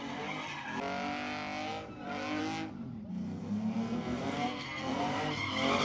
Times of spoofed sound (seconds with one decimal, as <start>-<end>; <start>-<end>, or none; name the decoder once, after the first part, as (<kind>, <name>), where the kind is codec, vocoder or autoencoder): 3.1-5.0 (codec, SNAC)